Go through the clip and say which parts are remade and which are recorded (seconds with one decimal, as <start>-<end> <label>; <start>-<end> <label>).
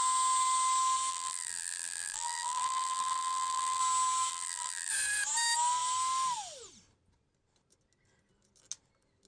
0.0-1.1 recorded; 1.1-3.8 remade; 3.8-4.3 recorded; 4.3-4.9 remade; 4.9-9.3 recorded